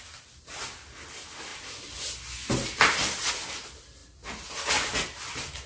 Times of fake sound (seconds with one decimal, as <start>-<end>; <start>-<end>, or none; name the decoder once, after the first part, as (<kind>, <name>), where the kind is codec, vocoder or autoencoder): none